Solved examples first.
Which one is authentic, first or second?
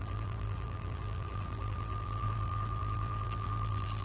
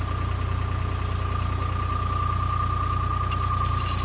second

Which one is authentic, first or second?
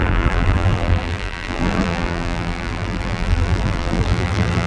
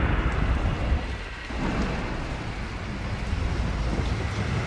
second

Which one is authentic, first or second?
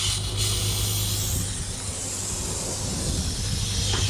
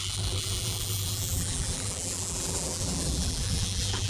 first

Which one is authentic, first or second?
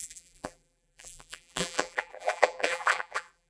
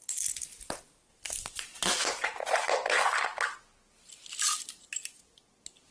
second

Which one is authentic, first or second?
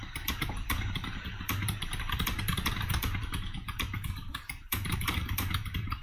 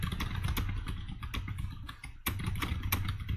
second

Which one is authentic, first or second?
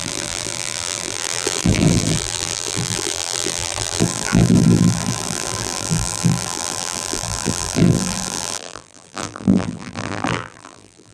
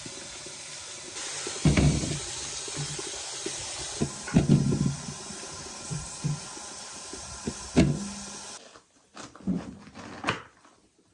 second